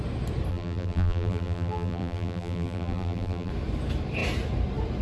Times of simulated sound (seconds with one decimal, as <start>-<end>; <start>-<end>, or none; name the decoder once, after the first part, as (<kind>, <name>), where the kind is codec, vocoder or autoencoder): 0.5-3.5 (vocoder, BigVGAN v2)